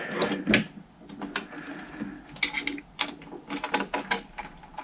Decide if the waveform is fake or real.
real